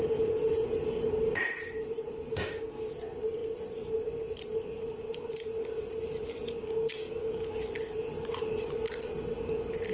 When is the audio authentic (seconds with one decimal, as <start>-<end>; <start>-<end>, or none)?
0.0-2.3; 2.9-7.0; 7.7-9.9